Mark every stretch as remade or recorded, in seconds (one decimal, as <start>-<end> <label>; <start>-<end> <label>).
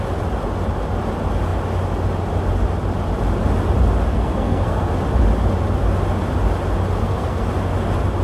0.0-4.1 recorded; 4.1-4.9 remade; 4.9-7.0 recorded; 7.0-7.5 remade; 7.5-8.2 recorded